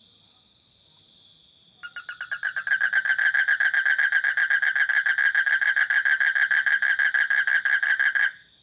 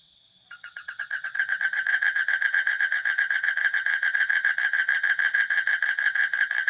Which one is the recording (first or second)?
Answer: first